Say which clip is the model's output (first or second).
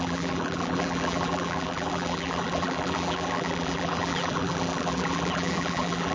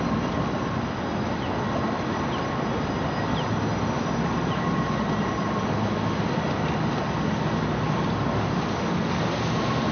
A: first